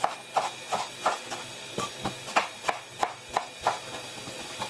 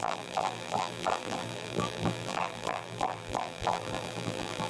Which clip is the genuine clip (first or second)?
first